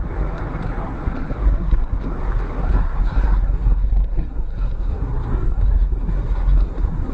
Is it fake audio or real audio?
fake